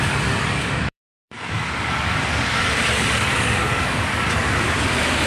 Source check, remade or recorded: remade